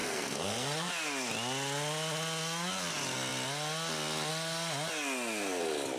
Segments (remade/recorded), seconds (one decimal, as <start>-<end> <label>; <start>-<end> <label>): 0.0-0.9 remade; 0.9-6.0 recorded